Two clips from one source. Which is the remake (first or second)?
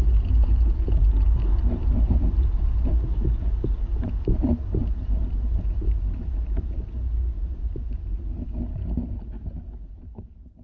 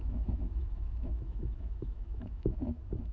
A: second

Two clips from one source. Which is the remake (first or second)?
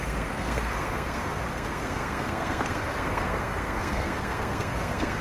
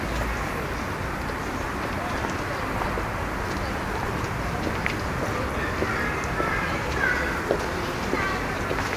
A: first